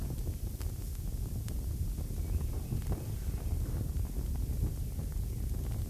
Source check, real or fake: real